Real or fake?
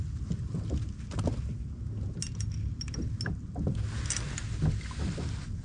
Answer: real